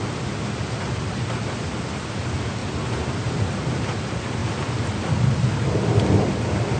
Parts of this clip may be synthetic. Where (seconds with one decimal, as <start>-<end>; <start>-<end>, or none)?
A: 2.6-3.8